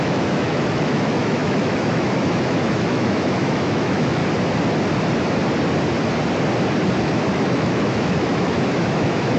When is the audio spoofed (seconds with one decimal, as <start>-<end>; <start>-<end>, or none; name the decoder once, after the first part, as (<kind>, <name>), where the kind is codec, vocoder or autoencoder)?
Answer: 0.0-4.2 (autoencoder, DAC-VAE); 7.0-9.4